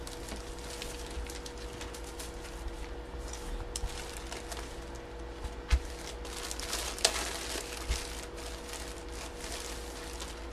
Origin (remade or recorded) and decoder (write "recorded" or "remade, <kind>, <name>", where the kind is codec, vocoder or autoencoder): recorded